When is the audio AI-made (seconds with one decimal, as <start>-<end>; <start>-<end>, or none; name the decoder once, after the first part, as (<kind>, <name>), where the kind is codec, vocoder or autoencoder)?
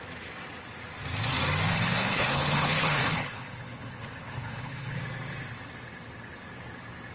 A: 1.7-5.0 (codec, HILCodec)